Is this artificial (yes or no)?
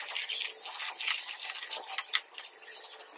no